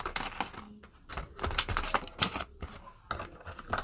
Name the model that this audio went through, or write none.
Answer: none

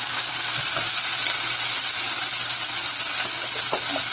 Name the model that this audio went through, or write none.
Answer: none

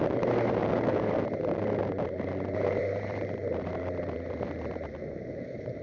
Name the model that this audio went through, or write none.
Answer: vocoder, BigVGAN v2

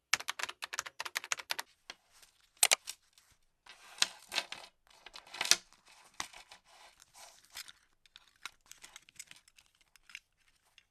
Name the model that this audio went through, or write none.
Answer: none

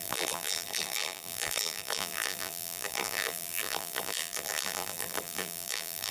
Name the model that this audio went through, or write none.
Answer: vocoder, BigVGAN v2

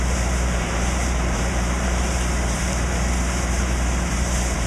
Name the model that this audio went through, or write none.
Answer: vocoder, BigVGAN v2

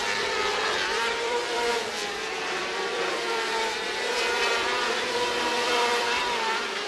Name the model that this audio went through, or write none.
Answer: vocoder, BigVGAN v2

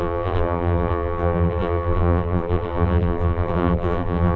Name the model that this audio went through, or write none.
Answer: vocoder, BigVGAN v2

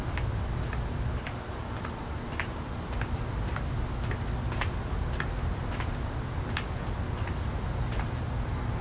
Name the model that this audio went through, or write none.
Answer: none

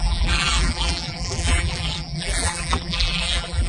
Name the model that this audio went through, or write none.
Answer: vocoder, BigVGAN v2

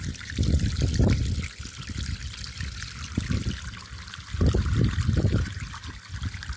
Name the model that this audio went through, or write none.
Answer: none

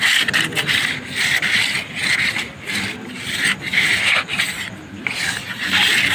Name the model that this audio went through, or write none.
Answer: none